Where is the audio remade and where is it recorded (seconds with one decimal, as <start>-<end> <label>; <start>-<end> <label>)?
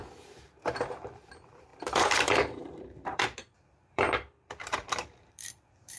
0.0-6.0 remade